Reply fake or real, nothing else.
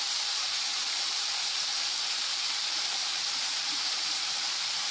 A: fake